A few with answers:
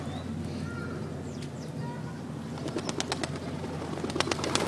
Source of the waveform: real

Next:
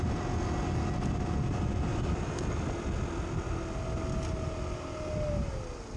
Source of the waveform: real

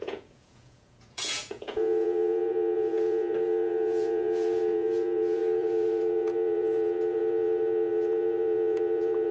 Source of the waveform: fake